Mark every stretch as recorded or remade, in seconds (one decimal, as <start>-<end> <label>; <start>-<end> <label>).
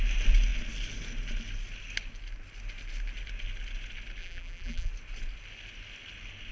0.0-4.2 recorded; 4.2-4.9 remade; 4.9-6.5 recorded